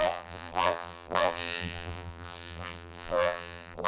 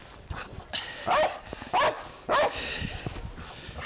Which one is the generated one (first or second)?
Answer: first